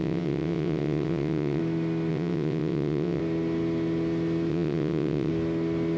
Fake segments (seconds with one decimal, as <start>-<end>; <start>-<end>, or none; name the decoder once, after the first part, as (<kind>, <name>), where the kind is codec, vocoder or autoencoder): 0.0-1.6 (vocoder, WaveNeXt); 2.1-3.2; 4.5-5.3